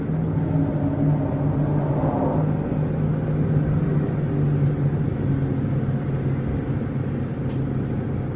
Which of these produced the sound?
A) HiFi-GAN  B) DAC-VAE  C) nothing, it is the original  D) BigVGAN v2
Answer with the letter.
C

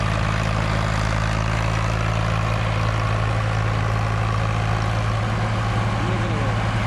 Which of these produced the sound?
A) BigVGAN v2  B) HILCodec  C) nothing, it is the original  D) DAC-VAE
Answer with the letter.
C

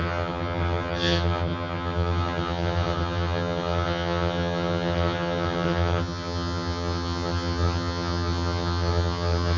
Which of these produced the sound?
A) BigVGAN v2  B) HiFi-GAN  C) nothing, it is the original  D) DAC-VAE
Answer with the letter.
B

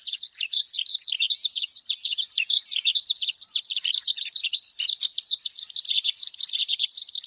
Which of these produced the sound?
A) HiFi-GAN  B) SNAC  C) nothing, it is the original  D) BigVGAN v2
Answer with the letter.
D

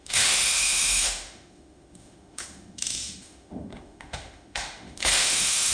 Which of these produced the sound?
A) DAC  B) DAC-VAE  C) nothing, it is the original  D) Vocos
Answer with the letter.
B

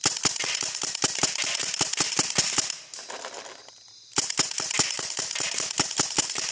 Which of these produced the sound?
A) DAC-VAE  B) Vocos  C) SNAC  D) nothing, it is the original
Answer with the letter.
D